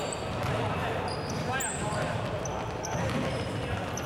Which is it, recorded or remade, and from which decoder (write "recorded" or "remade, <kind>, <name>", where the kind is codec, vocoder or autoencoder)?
recorded